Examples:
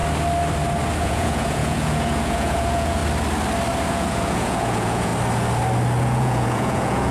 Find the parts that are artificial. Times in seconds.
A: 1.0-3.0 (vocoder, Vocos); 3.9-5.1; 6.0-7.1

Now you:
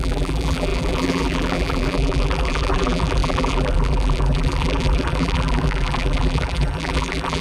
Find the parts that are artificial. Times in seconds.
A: 0.0-7.4 (vocoder, BigVGAN v2)